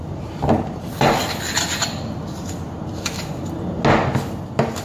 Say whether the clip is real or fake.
real